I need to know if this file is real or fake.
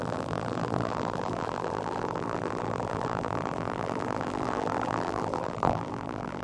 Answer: fake